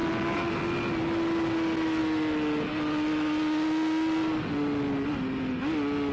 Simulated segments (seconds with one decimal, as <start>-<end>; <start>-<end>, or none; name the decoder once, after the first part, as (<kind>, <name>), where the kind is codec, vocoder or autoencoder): none